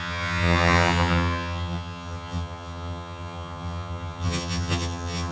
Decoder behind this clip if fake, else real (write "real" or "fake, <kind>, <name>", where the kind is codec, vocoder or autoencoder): fake, vocoder, HiFi-GAN